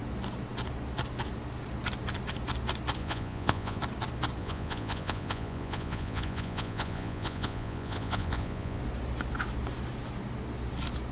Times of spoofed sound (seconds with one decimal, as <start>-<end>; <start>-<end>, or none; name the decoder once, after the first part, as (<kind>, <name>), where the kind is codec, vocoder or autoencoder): 3.0-3.8 (vocoder, Vocos); 4.4-8.8